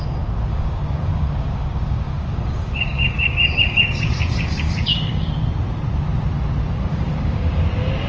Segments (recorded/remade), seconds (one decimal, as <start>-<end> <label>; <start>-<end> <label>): 0.0-0.5 recorded; 0.5-5.3 remade; 5.3-6.9 recorded; 6.9-7.6 remade; 7.6-8.1 recorded